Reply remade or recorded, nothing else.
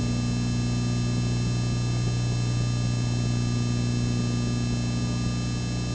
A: recorded